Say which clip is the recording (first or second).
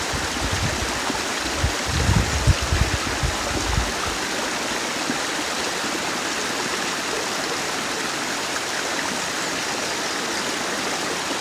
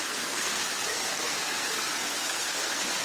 first